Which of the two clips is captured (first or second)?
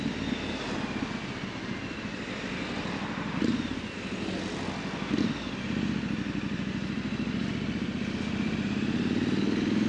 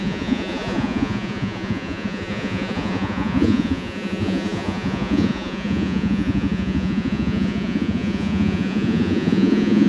first